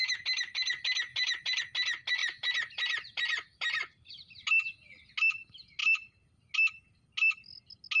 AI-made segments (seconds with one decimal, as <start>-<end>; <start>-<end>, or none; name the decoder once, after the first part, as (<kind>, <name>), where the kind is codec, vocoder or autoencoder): 1.1-1.6 (vocoder, BigVGAN v2); 2.2-4.1